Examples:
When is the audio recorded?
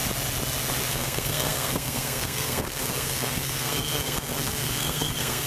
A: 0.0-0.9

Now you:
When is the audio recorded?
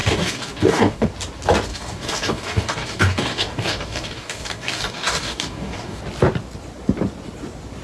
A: 1.1-1.7; 6.0-7.8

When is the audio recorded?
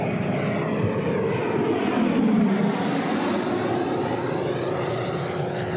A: 0.0-5.8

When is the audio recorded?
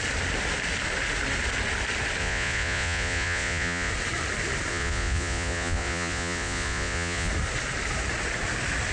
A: 0.0-2.2; 3.9-4.7; 7.3-8.9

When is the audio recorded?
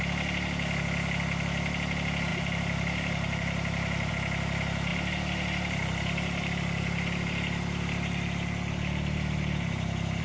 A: 0.0-2.3; 4.1-4.9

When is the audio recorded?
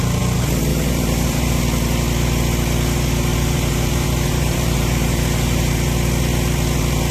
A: 0.0-0.7; 1.6-3.3; 5.7-7.1